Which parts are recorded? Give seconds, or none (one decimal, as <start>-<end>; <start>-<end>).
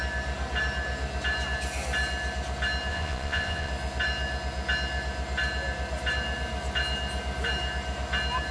0.0-2.9; 3.7-8.5